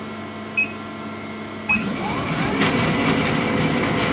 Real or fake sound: real